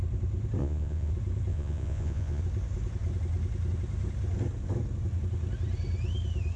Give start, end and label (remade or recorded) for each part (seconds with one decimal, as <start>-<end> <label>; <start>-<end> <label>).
0.0-0.6 recorded; 0.6-1.1 remade; 1.1-1.5 recorded; 1.5-2.4 remade; 2.4-6.6 recorded

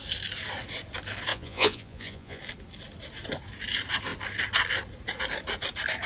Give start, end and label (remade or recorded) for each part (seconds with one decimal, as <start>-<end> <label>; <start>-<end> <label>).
0.0-1.3 recorded; 1.3-2.4 remade; 2.4-6.1 recorded

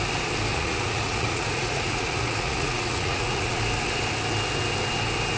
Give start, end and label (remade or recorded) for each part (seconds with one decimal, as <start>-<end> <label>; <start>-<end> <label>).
0.0-0.5 recorded; 0.5-3.6 remade; 3.6-5.4 recorded

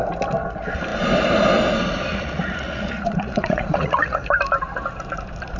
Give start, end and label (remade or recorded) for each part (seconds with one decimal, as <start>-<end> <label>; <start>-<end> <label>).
0.0-2.1 recorded; 2.1-4.2 remade; 4.2-5.6 recorded

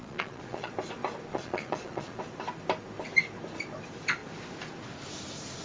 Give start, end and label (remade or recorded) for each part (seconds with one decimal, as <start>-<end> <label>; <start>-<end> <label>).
0.0-0.7 remade; 0.7-1.3 recorded; 1.3-2.2 remade; 2.2-5.6 recorded

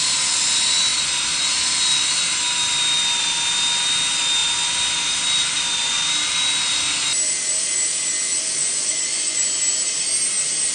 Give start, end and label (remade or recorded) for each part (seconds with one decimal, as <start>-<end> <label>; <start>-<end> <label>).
0.0-8.6 recorded; 8.6-9.4 remade; 9.4-10.7 recorded

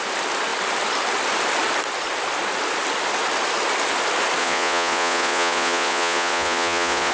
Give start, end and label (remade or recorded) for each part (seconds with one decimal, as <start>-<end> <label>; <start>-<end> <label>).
0.0-4.4 recorded; 4.4-7.1 remade

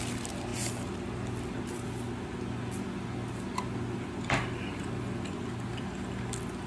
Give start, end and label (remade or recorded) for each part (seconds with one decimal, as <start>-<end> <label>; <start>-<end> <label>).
0.0-6.7 recorded